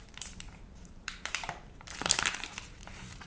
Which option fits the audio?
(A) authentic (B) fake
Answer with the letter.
B